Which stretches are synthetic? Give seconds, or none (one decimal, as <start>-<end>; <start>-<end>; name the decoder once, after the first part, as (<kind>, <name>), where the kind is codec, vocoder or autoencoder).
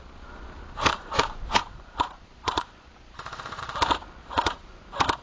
0.9-3.6 (vocoder, Vocos); 4.2-4.8